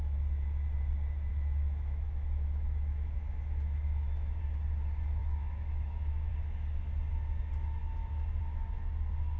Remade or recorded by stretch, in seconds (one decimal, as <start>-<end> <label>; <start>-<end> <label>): 0.0-1.3 recorded; 1.3-4.4 remade; 4.4-5.2 recorded; 5.2-6.3 remade; 6.3-9.4 recorded